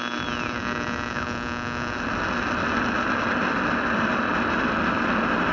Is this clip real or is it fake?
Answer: real